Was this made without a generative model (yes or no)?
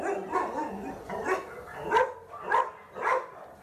yes